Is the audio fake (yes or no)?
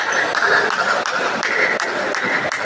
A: no